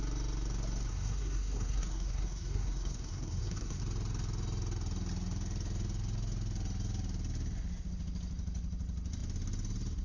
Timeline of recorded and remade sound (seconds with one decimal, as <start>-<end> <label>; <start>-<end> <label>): 0.0-0.9 recorded; 0.9-3.8 remade; 3.8-10.0 recorded